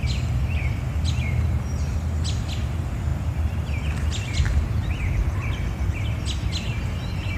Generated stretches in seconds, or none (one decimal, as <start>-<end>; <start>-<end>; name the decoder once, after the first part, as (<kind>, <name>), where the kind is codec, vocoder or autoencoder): none